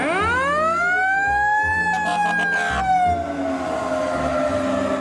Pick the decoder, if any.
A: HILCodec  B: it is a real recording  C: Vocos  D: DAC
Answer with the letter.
B